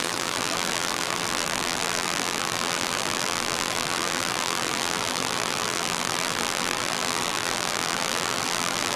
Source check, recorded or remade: remade